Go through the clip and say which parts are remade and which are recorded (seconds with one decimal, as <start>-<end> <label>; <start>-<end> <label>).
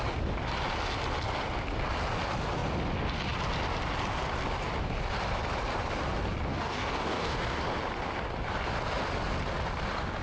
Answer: 0.0-6.5 recorded; 6.5-7.6 remade; 7.6-10.2 recorded